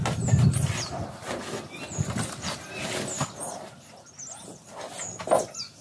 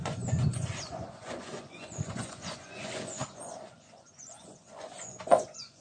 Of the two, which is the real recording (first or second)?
first